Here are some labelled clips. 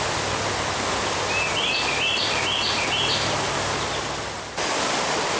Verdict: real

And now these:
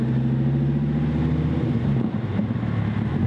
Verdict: real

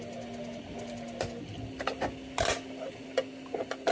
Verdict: real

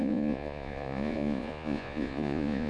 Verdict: fake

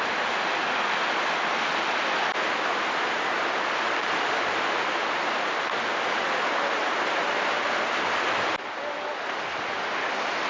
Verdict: real